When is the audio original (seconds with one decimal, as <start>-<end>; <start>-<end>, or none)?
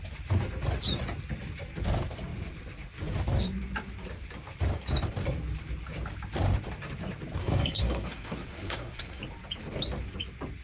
0.0-7.4; 9.2-10.6